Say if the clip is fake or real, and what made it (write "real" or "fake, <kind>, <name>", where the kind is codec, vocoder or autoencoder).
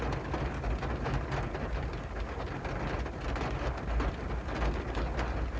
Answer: real